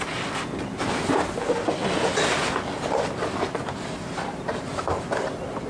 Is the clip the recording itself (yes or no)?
yes